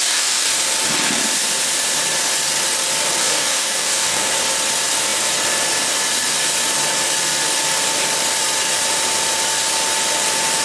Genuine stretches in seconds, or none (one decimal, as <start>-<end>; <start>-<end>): 0.5-3.2; 4.3-10.6